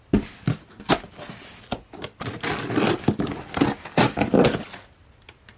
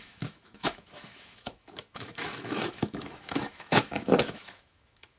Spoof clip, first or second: second